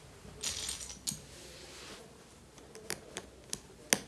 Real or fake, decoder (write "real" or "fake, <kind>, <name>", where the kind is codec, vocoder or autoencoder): real